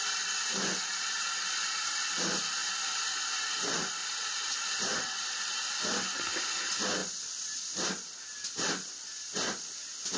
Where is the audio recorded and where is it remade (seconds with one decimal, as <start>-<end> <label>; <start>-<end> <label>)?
0.0-10.2 recorded